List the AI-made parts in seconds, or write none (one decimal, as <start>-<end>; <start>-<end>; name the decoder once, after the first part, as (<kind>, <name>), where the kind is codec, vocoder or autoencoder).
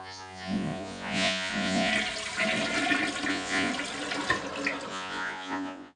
0.0-1.9 (vocoder, Vocos); 3.3-3.7; 4.9-6.0